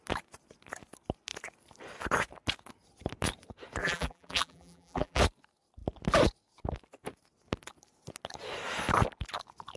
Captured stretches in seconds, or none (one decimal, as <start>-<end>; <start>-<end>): 0.0-3.8; 5.2-9.8